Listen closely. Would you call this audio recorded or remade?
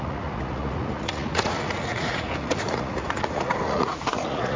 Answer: remade